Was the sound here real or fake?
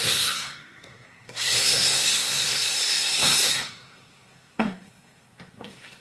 fake